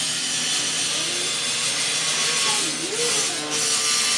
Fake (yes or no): no